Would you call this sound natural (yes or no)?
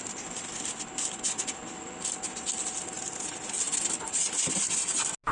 yes